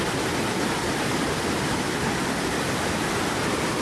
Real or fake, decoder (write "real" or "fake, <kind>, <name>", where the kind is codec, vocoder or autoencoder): real